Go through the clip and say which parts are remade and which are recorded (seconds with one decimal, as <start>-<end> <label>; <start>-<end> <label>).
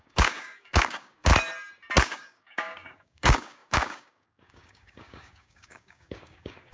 0.0-1.3 remade; 1.3-2.0 recorded; 2.0-6.7 remade